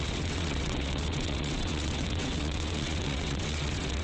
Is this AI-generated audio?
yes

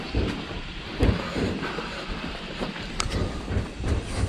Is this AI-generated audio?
yes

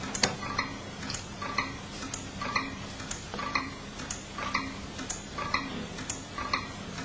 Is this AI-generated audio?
yes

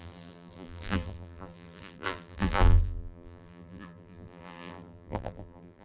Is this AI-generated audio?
yes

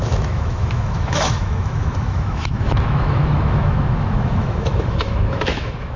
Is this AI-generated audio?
yes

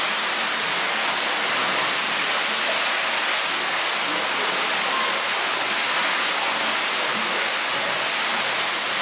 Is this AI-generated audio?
no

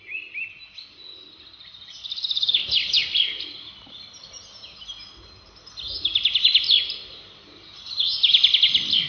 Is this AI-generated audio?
no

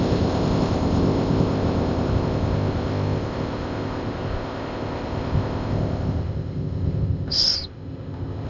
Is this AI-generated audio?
yes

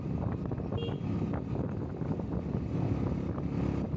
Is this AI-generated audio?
no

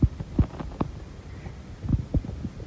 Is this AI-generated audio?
no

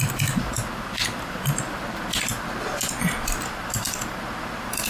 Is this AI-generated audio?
no